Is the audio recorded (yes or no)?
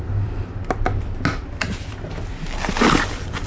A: yes